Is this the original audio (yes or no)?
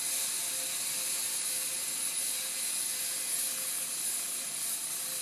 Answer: yes